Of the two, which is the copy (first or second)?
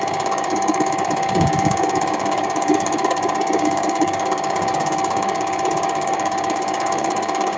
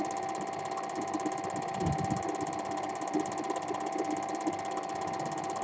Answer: first